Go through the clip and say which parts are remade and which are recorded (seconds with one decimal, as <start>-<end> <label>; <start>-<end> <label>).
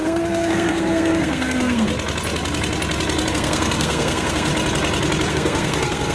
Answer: 0.0-1.9 remade; 1.9-3.3 recorded; 3.3-4.5 remade; 4.5-5.3 recorded; 5.3-6.1 remade